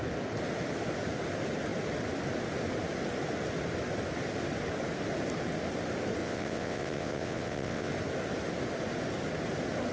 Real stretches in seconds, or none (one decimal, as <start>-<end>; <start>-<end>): 0.0-6.2; 7.9-9.9